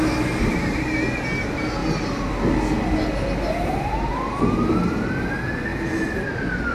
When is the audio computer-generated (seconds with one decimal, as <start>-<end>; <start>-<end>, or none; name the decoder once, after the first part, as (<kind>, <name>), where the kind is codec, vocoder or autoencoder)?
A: none